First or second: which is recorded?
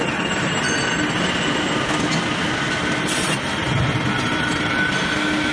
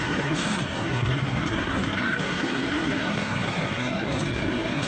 first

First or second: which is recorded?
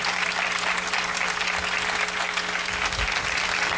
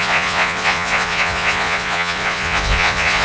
first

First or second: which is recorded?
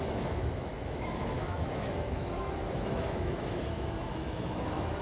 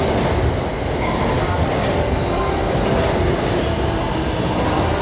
second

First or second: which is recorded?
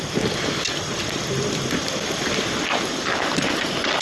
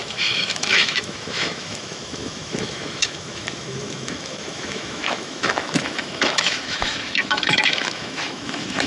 first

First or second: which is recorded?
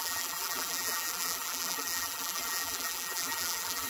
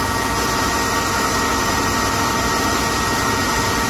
second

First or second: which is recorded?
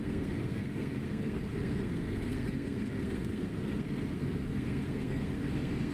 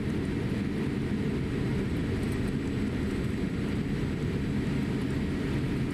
second